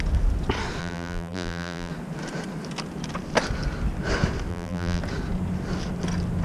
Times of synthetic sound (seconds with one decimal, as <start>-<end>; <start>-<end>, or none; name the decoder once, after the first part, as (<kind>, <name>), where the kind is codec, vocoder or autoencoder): 0.8-1.9 (vocoder, BigVGAN v2); 4.5-5.0

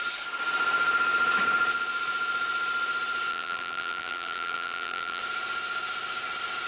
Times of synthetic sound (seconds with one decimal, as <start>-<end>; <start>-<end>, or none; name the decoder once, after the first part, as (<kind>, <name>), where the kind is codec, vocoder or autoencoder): 3.3-5.2 (vocoder, BigVGAN v2)

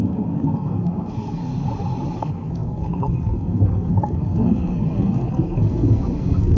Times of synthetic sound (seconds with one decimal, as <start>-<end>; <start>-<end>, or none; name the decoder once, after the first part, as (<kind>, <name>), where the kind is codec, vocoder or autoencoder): 0.0-1.5 (codec, SNAC); 2.2-6.6

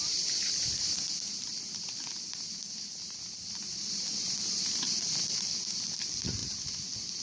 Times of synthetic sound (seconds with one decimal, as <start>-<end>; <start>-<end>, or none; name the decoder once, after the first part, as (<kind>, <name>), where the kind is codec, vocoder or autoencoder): none